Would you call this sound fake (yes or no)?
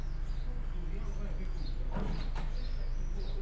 no